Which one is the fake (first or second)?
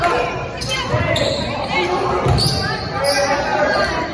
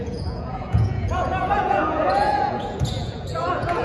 second